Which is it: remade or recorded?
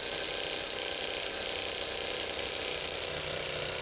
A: recorded